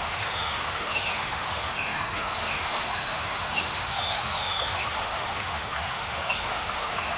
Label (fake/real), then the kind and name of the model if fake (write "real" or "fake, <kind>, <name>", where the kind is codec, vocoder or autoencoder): fake, autoencoder, DAC-VAE